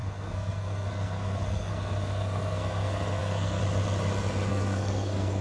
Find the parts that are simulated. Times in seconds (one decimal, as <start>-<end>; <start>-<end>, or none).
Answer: 0.0-3.6; 4.5-5.4